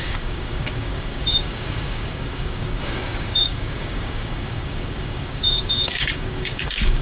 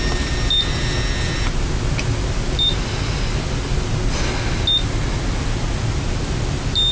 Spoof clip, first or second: first